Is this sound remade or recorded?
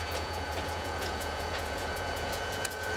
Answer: remade